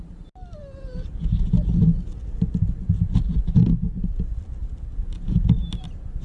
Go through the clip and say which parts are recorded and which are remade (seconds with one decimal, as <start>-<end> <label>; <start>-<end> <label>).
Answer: 0.0-6.2 recorded